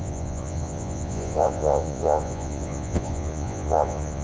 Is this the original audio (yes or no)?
no